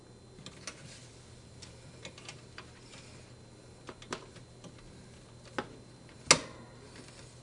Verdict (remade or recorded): recorded